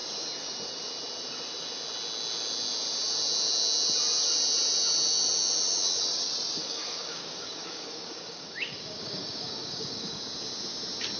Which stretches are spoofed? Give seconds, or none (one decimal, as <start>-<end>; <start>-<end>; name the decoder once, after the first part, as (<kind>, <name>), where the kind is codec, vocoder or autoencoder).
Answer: 6.6-10.2 (codec, DAC)